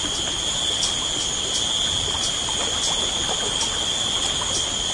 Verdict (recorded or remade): recorded